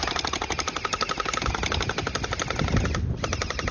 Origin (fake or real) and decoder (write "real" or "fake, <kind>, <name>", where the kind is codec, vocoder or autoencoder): real